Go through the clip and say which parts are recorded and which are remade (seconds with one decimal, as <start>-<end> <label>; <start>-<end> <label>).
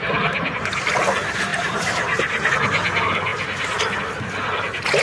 0.0-1.5 recorded; 1.5-2.5 remade; 2.5-5.0 recorded